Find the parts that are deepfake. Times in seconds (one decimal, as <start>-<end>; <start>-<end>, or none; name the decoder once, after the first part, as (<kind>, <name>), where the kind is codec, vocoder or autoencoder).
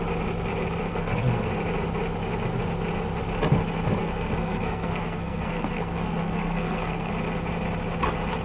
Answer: 0.9-1.5 (codec, SNAC); 4.0-7.1